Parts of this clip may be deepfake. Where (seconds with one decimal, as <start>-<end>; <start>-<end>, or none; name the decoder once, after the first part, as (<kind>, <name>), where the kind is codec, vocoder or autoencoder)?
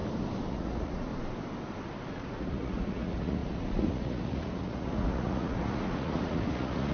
0.5-1.1 (vocoder, Vocos); 2.1-6.9